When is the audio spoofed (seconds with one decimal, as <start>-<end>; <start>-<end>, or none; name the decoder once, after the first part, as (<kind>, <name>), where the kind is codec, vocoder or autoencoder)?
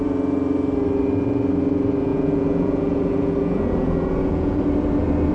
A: 2.1-4.6 (vocoder, Vocos)